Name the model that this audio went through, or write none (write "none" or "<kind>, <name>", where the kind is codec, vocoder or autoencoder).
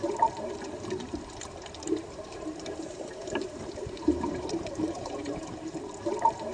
vocoder, BigVGAN v2